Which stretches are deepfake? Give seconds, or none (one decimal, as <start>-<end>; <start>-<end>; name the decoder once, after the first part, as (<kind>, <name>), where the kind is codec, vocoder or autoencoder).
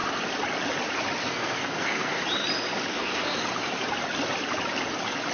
1.2-2.2 (codec, SNAC); 2.9-3.4